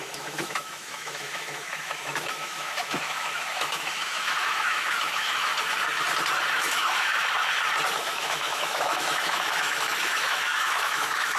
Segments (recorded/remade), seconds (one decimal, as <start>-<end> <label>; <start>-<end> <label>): 0.0-5.5 remade; 5.5-6.5 recorded; 6.5-7.2 remade; 7.2-8.0 recorded; 8.0-11.4 remade